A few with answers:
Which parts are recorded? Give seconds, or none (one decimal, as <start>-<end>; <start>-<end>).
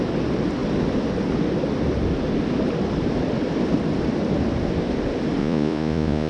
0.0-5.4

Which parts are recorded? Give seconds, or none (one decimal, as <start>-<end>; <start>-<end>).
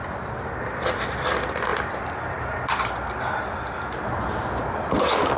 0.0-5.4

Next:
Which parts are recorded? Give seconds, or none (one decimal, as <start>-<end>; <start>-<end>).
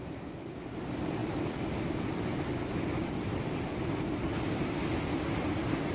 0.0-5.9